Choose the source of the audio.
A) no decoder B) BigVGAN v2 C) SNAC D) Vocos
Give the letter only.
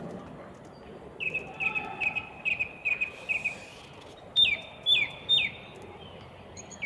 A